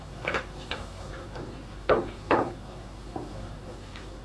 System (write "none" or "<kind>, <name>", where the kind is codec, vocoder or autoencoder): codec, SNAC